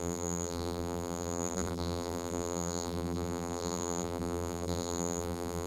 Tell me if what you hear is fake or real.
fake